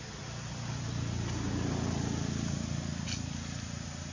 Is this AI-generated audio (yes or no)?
no